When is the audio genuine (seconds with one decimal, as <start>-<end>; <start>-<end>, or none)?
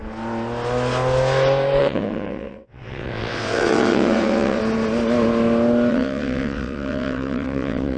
0.0-1.8; 4.6-5.9